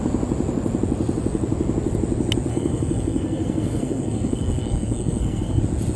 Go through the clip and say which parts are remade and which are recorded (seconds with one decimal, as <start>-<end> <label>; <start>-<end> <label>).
0.0-2.5 recorded; 2.5-5.6 remade; 5.6-6.0 recorded